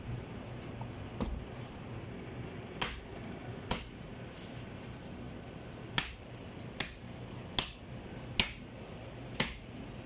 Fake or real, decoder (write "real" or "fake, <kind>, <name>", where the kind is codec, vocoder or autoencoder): real